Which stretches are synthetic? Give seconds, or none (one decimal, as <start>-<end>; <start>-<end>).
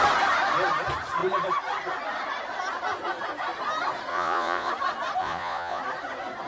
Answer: 4.1-4.7; 5.2-5.8